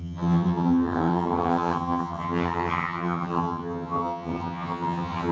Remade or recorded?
remade